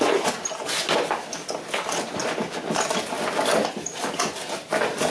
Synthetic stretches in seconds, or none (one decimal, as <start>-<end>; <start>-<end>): 3.1-4.1